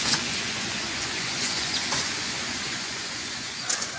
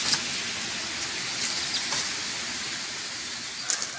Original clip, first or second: second